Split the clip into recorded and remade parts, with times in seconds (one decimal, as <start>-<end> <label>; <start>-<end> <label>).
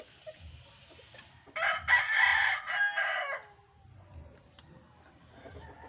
0.0-5.9 recorded